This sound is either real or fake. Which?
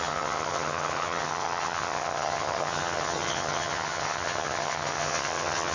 fake